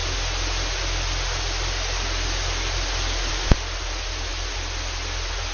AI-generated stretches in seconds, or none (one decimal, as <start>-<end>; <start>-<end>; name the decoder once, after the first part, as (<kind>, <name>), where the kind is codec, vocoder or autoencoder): none